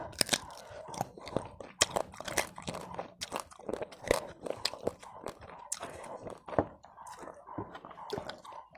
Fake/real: real